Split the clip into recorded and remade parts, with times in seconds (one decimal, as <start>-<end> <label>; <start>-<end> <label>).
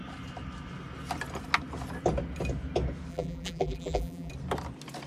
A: 0.0-3.1 recorded; 3.1-4.3 remade; 4.3-5.1 recorded